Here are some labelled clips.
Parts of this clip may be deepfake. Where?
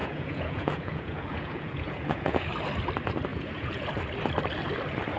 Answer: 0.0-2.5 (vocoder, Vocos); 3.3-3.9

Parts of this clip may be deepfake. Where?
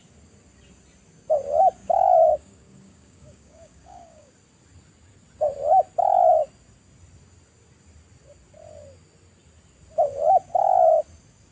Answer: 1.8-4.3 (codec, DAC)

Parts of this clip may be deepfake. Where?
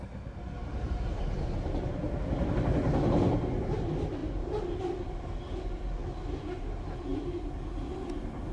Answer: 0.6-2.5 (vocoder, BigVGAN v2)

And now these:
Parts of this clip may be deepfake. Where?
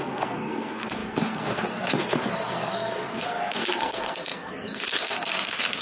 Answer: 0.0-5.8 (codec, SNAC)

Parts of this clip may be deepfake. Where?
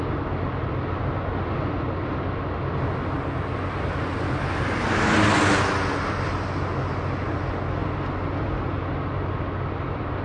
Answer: none